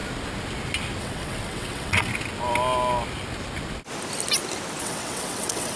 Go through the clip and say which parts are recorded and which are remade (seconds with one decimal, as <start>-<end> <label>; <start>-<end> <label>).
0.0-1.0 recorded; 1.0-2.1 remade; 2.1-4.8 recorded; 4.8-5.8 remade